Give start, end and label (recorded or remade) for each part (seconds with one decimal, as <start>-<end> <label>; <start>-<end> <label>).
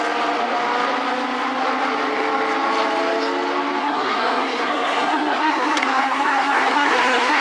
0.0-3.8 recorded; 3.8-7.4 remade